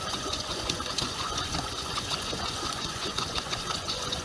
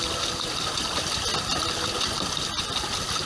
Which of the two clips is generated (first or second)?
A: first